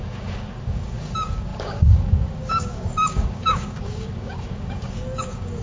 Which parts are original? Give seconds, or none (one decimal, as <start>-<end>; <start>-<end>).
none